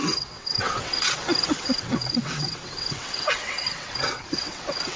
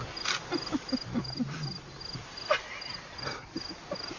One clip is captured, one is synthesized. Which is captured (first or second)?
second